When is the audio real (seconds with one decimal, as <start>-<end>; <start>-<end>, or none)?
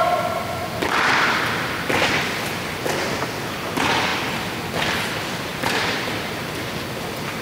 0.0-5.5; 6.3-7.4